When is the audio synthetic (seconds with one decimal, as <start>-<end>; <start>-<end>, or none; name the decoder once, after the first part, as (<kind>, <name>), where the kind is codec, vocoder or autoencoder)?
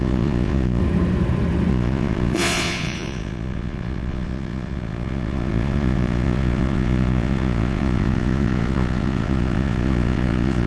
0.0-0.8 (vocoder, Vocos); 1.7-10.7